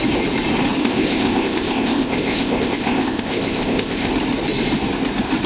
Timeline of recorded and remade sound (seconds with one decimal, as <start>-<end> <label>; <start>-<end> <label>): 0.0-0.8 recorded; 0.8-4.1 remade; 4.1-5.5 recorded